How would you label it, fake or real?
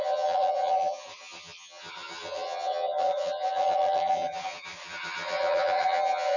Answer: fake